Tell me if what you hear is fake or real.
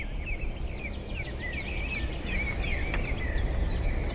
real